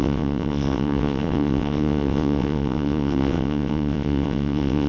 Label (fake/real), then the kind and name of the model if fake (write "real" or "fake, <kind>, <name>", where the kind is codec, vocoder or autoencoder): fake, vocoder, WaveNeXt